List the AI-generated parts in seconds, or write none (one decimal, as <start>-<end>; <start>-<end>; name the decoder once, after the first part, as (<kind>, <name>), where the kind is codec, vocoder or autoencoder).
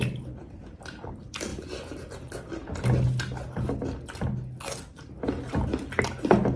none